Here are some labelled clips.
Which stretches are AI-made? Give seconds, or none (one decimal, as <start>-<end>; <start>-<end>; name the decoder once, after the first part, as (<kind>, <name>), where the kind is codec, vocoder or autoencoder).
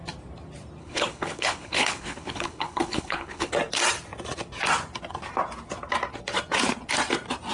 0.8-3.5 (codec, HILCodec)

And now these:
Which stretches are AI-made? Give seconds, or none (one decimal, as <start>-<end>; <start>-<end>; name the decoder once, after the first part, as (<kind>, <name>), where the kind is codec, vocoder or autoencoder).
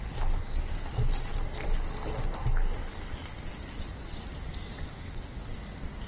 4.9-5.5 (codec, HILCodec)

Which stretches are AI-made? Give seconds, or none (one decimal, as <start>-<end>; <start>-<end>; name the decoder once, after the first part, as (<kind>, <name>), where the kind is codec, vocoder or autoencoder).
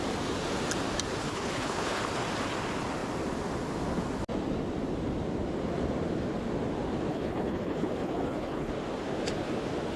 1.2-2.0 (codec, HILCodec); 7.1-8.7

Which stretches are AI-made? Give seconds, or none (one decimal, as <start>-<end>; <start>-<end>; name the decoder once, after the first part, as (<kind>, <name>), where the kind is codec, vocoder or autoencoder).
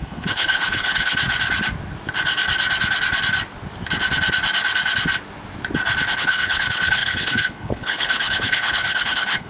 0.0-1.2 (codec, HILCodec); 6.1-9.5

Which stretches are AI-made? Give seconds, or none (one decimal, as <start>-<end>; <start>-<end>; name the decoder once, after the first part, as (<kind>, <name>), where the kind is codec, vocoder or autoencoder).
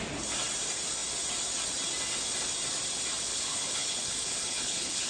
3.3-5.1 (codec, HILCodec)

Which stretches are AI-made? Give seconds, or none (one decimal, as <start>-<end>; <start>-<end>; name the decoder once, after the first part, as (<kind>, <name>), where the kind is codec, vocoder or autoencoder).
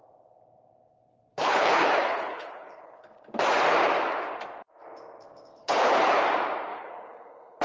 1.3-3.0 (codec, HILCodec); 5.6-6.2; 6.7-7.6